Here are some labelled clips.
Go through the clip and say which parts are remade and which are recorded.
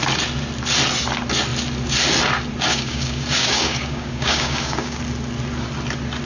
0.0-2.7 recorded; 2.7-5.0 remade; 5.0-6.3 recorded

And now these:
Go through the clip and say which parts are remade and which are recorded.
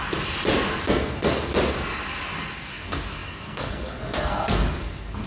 0.0-0.9 recorded; 0.9-1.5 remade; 1.5-2.7 recorded; 2.7-5.3 remade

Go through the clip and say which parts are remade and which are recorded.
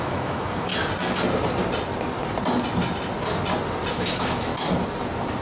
0.0-0.7 remade; 0.7-3.9 recorded; 3.9-4.5 remade; 4.5-5.4 recorded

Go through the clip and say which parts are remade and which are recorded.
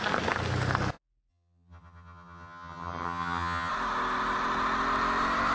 0.0-1.3 recorded; 1.3-3.7 remade; 3.7-5.5 recorded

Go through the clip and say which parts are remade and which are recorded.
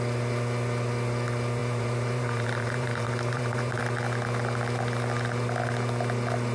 0.0-1.6 recorded; 1.6-3.8 remade; 3.8-6.5 recorded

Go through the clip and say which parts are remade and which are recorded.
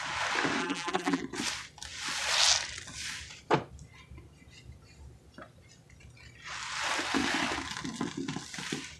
0.0-0.6 recorded; 0.6-1.2 remade; 1.2-9.0 recorded